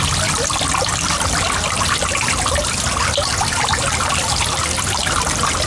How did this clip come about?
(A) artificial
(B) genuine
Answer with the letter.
B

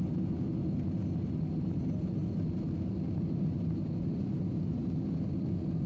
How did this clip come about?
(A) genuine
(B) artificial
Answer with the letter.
A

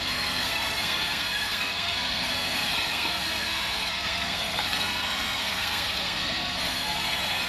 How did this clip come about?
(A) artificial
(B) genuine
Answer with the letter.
A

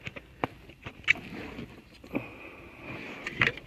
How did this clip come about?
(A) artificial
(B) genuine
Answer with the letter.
B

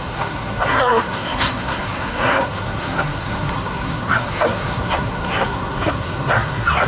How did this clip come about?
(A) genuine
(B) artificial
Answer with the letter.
B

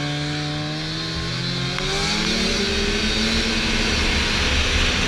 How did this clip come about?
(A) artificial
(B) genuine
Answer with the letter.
B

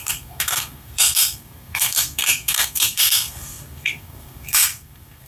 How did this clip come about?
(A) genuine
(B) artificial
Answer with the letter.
B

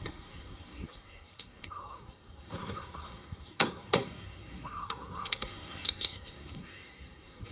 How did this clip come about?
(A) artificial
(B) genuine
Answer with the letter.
A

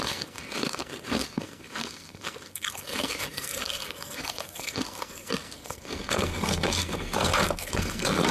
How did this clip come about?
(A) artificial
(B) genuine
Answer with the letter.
A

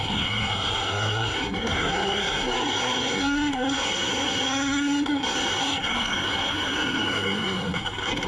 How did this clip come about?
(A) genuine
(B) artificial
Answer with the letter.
B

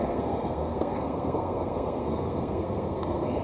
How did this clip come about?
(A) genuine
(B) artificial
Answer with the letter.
B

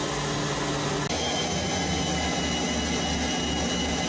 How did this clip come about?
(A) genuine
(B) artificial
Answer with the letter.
A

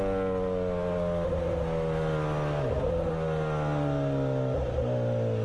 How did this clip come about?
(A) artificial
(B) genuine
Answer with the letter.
B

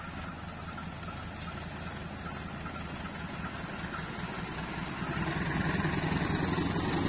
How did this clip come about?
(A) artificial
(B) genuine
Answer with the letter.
B